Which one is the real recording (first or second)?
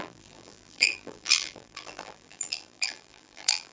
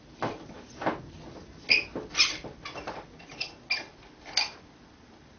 second